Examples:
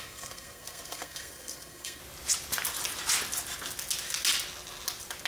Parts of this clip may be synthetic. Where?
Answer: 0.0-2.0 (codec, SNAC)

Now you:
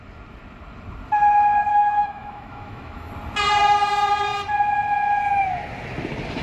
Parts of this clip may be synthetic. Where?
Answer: 1.7-3.1 (autoencoder, DAC-VAE)